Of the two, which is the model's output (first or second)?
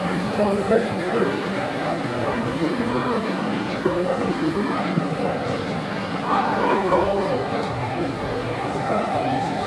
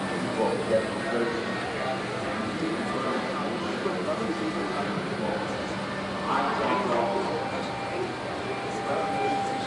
first